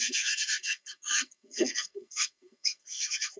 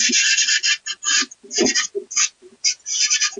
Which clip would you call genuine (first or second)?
second